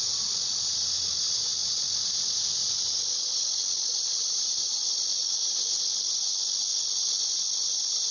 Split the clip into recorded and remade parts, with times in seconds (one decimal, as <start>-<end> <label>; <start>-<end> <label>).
0.0-8.1 recorded